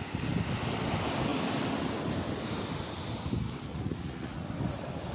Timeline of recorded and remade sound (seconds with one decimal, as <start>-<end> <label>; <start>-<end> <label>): 0.0-3.7 recorded; 3.7-4.5 remade; 4.5-5.1 recorded